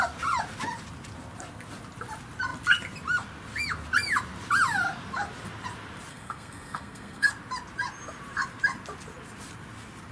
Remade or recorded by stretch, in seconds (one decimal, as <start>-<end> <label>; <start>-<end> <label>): 0.0-6.1 recorded; 6.1-7.3 remade; 7.3-10.1 recorded